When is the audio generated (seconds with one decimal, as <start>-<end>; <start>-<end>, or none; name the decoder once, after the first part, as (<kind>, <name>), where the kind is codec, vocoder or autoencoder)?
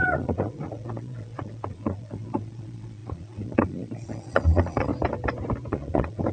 0.0-4.9 (vocoder, Vocos); 5.7-6.3